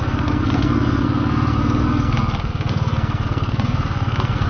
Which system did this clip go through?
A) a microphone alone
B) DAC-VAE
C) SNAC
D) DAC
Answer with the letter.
C